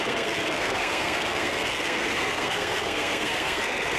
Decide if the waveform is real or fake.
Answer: fake